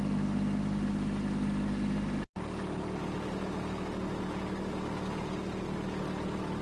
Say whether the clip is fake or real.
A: real